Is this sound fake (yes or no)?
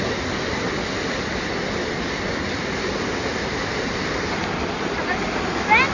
no